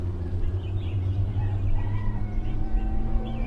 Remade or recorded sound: remade